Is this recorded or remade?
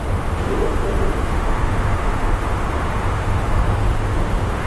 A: remade